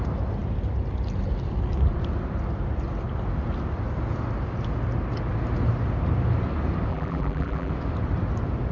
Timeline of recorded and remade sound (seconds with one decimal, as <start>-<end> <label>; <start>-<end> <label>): 0.0-6.9 recorded; 6.9-7.7 remade; 7.7-8.7 recorded